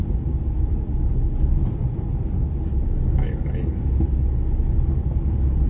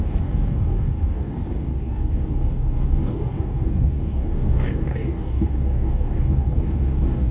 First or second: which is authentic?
first